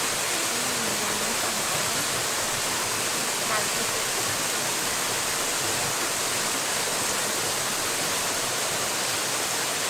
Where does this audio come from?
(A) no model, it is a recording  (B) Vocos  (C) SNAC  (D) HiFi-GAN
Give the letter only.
A